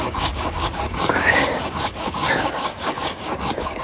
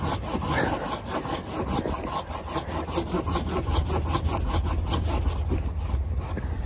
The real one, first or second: second